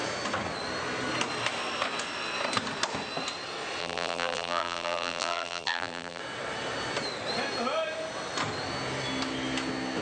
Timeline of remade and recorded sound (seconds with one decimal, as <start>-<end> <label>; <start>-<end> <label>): 0.0-3.8 recorded; 3.8-6.2 remade; 6.2-10.0 recorded